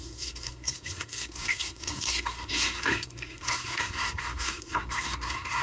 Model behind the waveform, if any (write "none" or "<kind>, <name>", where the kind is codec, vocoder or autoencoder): codec, SNAC